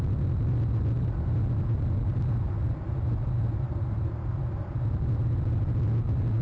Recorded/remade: recorded